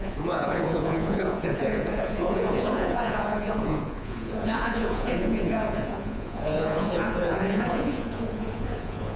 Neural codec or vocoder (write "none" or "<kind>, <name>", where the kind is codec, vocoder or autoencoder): vocoder, Vocos